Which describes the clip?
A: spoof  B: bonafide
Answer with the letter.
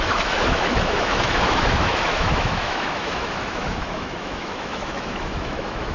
A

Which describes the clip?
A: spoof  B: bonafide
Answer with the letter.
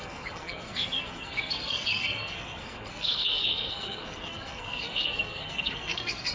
A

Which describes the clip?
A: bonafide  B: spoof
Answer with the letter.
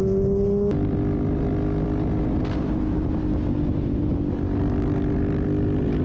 A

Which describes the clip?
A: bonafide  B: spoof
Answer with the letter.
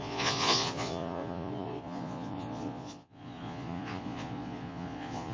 B